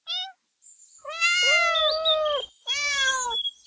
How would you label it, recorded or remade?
recorded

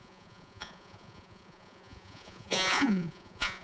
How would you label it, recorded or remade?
remade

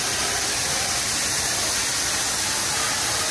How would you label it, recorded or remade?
recorded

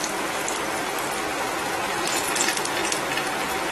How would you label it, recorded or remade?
recorded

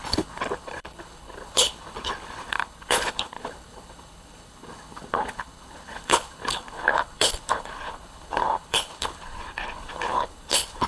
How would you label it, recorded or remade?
remade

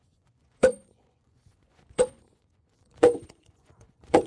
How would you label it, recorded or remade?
remade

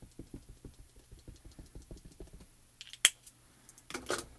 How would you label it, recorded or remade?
recorded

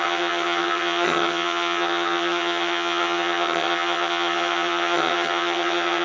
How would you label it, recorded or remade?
remade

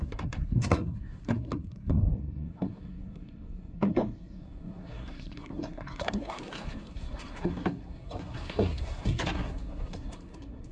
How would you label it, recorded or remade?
remade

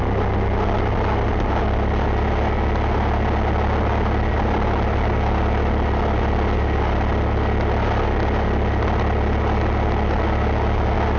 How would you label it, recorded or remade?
recorded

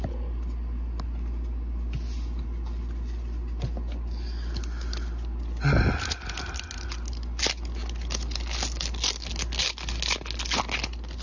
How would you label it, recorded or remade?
recorded